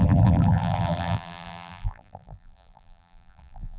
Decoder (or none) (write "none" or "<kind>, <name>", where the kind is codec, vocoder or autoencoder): vocoder, BigVGAN v2